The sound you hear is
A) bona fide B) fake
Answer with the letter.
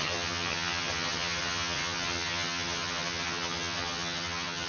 B